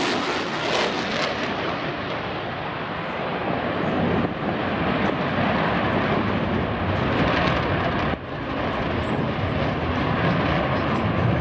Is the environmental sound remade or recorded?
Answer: recorded